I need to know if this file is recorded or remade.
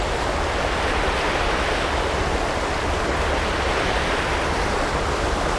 recorded